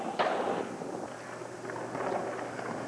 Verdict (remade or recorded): recorded